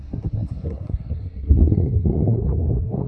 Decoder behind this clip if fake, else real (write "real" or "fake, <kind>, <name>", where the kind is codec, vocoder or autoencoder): fake, codec, SNAC